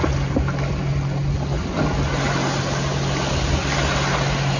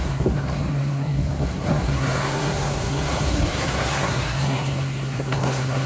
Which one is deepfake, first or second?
second